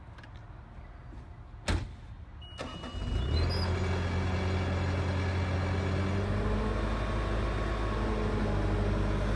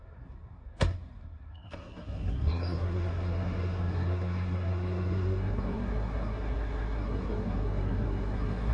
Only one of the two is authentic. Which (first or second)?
first